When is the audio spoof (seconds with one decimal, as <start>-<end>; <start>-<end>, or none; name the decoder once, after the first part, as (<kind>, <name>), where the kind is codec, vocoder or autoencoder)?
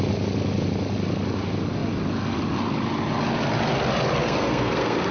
4.2-5.1 (codec, SNAC)